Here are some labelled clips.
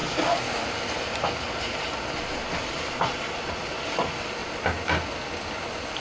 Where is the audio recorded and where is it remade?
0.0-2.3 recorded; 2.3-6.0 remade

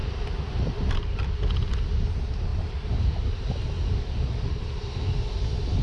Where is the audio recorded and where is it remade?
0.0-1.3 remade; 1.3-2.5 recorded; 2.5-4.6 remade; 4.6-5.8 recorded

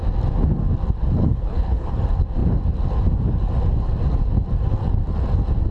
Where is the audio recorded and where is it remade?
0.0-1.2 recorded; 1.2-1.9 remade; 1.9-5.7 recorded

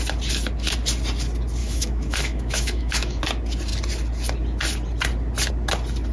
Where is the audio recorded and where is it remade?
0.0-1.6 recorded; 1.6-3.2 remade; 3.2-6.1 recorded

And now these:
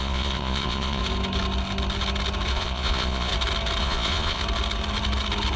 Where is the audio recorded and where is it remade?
0.0-1.0 remade; 1.0-2.5 recorded; 2.5-3.3 remade; 3.3-3.8 recorded; 3.8-4.4 remade; 4.4-5.6 recorded